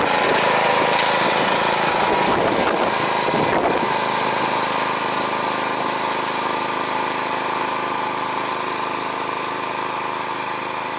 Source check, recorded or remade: recorded